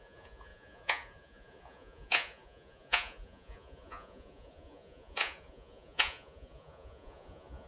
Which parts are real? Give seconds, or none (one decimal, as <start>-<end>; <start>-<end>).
none